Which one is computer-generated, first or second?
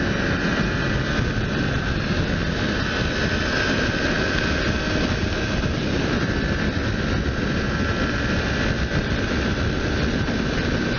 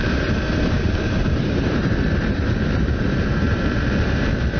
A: second